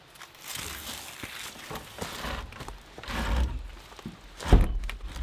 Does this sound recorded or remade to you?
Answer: recorded